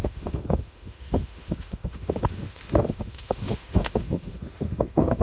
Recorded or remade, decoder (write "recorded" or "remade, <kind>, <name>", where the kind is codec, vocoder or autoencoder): remade, autoencoder, DAC-VAE